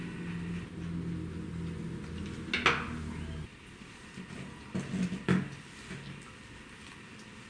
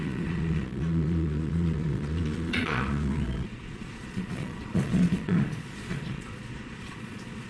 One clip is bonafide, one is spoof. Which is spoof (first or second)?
second